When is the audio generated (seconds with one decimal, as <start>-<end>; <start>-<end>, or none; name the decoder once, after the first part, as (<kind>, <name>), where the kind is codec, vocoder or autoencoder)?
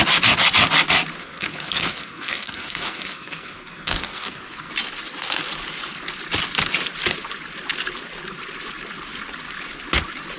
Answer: 1.2-4.7 (codec, SNAC)